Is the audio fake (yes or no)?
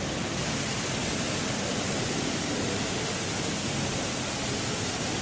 no